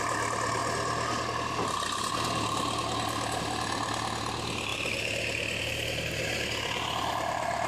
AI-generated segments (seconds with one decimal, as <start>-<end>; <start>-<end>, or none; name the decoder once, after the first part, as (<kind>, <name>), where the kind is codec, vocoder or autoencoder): none